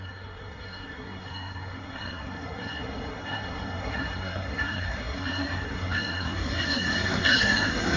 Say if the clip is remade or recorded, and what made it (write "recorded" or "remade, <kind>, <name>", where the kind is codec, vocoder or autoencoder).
remade, codec, SNAC